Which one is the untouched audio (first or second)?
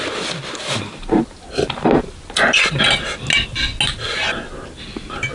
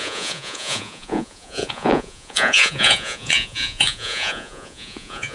first